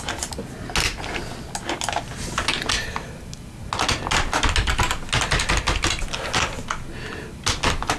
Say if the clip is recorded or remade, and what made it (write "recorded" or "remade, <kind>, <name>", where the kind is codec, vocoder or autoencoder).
recorded